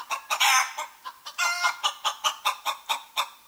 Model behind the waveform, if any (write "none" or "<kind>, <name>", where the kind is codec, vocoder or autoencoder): none